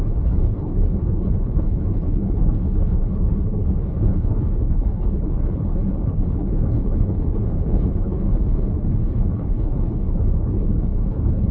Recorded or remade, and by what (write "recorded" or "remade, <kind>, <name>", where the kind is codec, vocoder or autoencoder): remade, codec, HILCodec